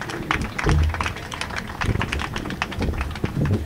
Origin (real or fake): real